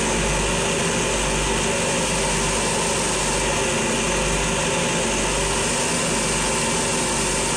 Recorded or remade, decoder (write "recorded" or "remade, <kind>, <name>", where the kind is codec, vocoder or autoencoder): recorded